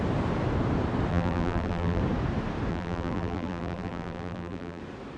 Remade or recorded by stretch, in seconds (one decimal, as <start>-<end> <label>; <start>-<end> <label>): 0.0-1.1 recorded; 1.1-2.0 remade; 2.0-2.7 recorded; 2.7-4.8 remade; 4.8-5.2 recorded

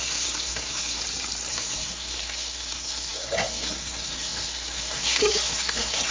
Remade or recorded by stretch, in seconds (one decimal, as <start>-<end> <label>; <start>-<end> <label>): 0.0-1.0 remade; 1.0-1.5 recorded; 1.5-6.1 remade